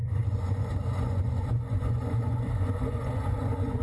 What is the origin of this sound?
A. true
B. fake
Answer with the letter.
B